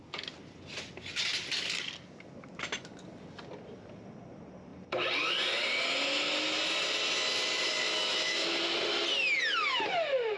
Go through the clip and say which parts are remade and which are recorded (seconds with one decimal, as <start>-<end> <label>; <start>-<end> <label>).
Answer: 0.0-7.9 recorded; 7.9-8.6 remade; 8.6-10.4 recorded